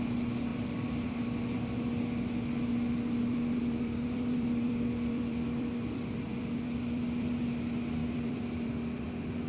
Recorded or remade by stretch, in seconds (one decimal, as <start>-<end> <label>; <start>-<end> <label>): 0.0-3.3 recorded; 3.3-7.4 remade; 7.4-8.0 recorded; 8.0-9.1 remade; 9.1-9.5 recorded